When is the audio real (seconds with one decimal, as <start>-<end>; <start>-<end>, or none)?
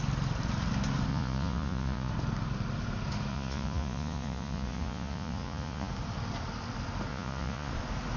0.0-1.1; 2.1-3.3; 5.9-7.1; 7.7-8.2